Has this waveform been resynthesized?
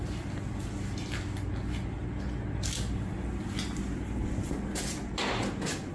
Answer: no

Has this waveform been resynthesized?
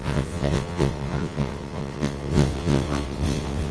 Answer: yes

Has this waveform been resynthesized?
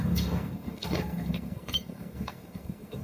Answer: yes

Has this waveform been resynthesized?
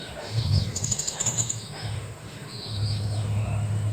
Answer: yes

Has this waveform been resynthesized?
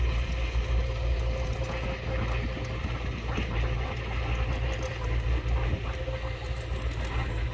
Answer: no